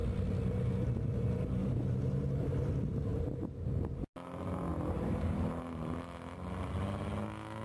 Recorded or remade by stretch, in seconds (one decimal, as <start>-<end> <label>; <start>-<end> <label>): 0.0-1.6 recorded; 1.6-2.7 remade; 2.7-3.1 recorded; 3.1-3.7 remade; 3.7-7.6 recorded